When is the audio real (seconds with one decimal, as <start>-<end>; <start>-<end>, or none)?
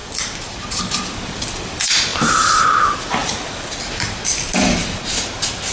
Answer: 0.0-2.1; 2.6-5.7